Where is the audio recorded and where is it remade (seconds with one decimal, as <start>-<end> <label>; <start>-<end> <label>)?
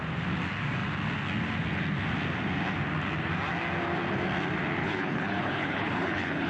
0.0-4.8 recorded; 4.8-6.5 remade